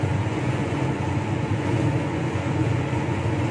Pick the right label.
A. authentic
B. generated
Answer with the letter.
B